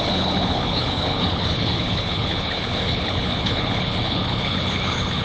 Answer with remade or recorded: remade